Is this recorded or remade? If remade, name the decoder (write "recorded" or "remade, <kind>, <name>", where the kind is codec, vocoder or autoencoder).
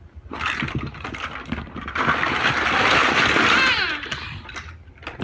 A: recorded